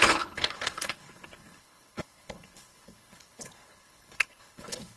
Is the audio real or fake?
fake